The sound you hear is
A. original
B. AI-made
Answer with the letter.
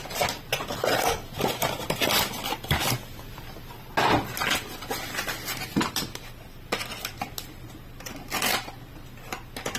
A